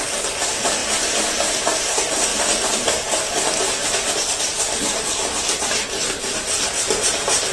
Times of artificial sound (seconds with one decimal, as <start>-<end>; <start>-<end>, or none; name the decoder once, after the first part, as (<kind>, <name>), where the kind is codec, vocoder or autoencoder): none